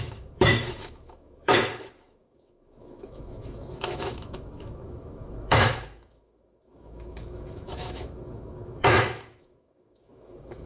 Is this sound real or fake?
fake